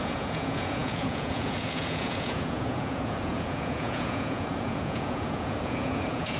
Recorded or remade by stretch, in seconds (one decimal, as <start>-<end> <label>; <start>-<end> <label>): 0.0-6.4 remade